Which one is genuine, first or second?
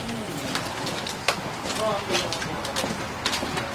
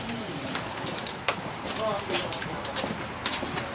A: first